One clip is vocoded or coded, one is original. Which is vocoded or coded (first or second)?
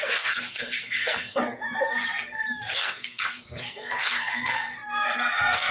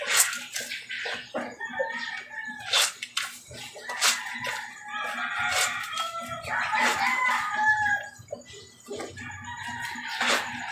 first